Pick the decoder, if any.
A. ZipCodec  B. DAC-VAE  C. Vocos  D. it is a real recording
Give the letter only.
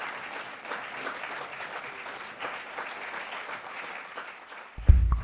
D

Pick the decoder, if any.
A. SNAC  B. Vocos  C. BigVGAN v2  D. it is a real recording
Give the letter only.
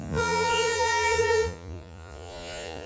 B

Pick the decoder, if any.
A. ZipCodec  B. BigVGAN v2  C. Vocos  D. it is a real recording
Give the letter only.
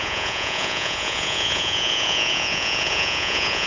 C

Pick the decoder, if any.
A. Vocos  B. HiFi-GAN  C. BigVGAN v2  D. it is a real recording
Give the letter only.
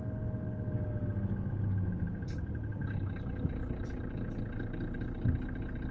D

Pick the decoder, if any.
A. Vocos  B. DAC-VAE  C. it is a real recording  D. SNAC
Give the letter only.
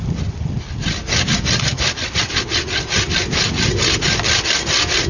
C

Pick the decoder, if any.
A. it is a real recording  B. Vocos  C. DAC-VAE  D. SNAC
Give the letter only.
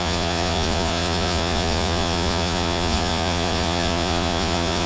B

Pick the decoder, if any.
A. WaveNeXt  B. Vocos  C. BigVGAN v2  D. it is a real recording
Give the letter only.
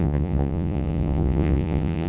B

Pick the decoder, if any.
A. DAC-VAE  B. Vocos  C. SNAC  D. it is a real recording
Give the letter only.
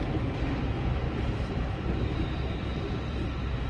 D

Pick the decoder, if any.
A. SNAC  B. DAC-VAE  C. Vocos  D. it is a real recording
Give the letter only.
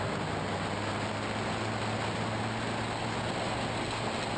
D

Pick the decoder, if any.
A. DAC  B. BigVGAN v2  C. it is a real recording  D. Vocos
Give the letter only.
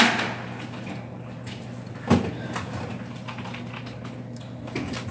C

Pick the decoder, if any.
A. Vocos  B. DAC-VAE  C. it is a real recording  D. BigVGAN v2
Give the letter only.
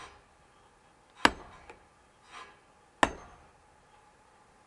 C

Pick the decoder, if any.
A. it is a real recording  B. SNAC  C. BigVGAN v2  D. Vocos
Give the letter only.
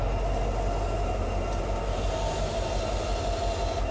A